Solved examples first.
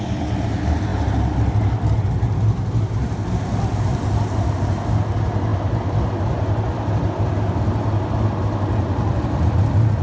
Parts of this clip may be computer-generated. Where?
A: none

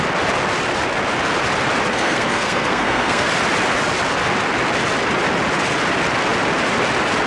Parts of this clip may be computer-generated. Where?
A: 1.9-3.3 (codec, SNAC)

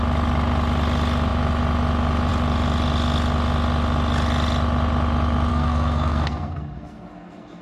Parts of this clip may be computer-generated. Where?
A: 5.5-7.6 (codec, SNAC)

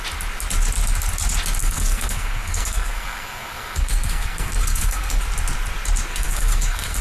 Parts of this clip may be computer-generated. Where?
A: 1.6-5.2 (codec, SNAC); 6.1-7.0